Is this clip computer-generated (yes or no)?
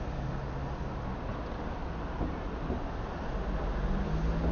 no